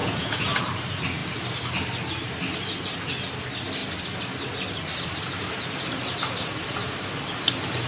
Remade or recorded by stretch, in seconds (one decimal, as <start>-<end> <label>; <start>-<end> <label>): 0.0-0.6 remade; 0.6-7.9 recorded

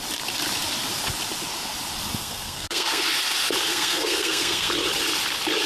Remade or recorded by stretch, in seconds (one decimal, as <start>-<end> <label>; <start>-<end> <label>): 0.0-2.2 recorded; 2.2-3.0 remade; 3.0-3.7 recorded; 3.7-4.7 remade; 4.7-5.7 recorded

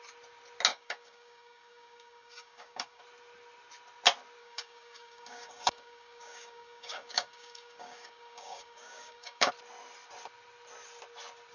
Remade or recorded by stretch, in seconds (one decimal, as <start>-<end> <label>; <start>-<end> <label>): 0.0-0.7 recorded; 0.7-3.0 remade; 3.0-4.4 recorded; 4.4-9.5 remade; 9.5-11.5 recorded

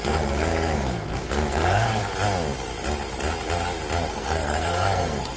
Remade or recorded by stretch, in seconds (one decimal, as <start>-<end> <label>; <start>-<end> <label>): 0.0-2.0 remade; 2.0-4.1 recorded; 4.1-5.4 remade

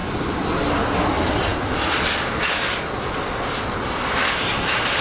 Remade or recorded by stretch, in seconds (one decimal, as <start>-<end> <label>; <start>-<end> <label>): 0.0-5.0 recorded

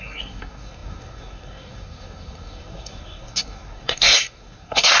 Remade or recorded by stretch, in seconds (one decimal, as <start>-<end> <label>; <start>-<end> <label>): 0.0-5.0 remade

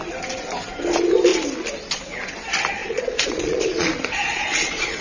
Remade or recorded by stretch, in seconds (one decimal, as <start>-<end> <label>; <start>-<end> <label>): 0.0-2.8 recorded; 2.8-5.0 remade